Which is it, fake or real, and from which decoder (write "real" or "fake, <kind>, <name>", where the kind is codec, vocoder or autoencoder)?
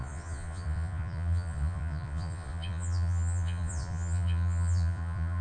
fake, vocoder, Vocos